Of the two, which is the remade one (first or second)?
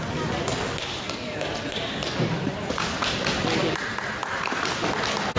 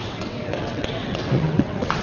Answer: second